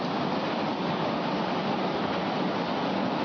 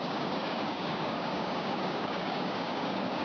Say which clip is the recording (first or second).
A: first